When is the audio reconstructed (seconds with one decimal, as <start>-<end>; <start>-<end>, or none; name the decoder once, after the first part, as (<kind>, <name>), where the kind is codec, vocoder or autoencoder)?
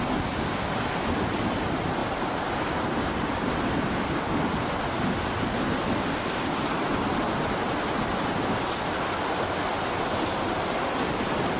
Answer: 2.0-3.6 (vocoder, BigVGAN v2)